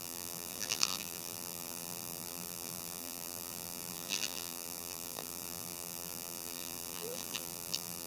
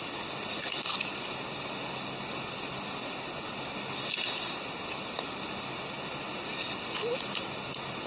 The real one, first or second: second